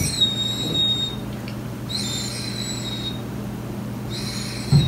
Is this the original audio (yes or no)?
yes